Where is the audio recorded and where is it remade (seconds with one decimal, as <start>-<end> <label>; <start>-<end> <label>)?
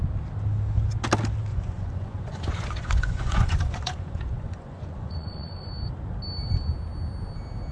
0.0-1.5 recorded; 1.5-5.7 remade; 5.7-7.7 recorded